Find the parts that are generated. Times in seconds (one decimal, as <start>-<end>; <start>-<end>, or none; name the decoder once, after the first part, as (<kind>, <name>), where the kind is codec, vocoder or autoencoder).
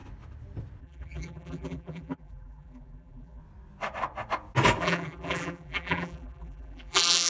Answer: 0.8-3.4 (vocoder, BigVGAN v2); 4.8-7.3